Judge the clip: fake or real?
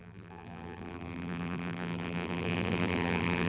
fake